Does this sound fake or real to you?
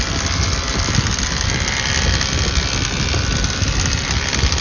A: real